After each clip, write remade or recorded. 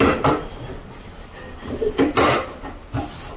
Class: recorded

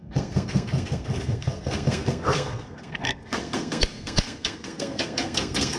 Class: remade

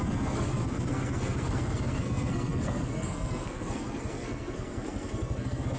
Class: remade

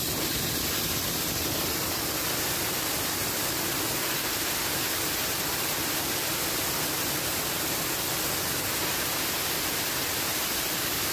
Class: remade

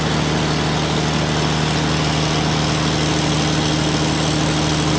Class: recorded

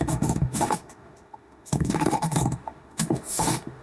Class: remade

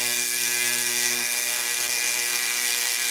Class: remade